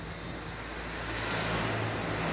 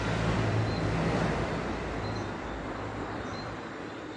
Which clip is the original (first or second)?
first